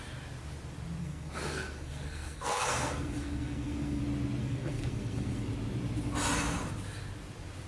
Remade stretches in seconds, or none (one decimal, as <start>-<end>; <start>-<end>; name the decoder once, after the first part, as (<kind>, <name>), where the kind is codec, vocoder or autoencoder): 1.0-4.0 (codec, SNAC); 4.4-5.5